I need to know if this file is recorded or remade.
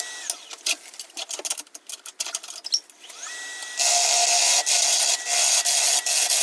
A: recorded